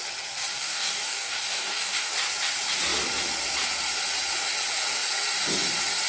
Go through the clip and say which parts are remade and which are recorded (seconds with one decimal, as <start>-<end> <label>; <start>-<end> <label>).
0.0-0.5 recorded; 0.5-2.1 remade; 2.1-6.1 recorded